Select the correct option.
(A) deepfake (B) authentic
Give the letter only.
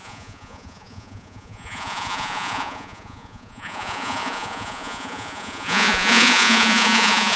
A